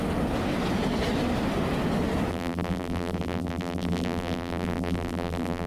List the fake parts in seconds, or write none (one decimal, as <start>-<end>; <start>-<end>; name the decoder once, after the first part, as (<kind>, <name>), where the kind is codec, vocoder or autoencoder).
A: 2.3-5.7 (vocoder, BigVGAN v2)